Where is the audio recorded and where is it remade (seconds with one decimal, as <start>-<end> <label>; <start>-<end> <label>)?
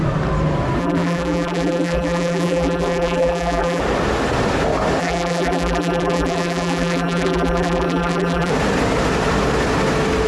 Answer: 0.0-0.8 recorded; 0.8-3.8 remade; 3.8-5.0 recorded; 5.0-8.5 remade; 8.5-10.3 recorded